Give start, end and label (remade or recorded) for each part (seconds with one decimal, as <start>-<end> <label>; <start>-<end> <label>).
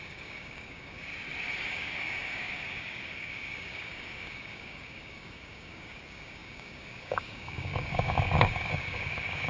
0.0-1.1 remade; 1.1-1.6 recorded; 1.6-9.5 remade